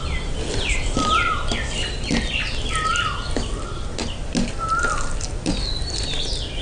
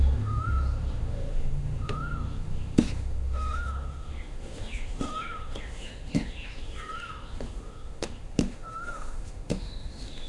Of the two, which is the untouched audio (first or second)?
first